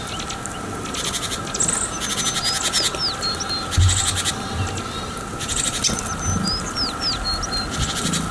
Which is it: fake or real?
real